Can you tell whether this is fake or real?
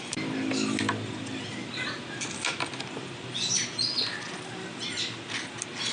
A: real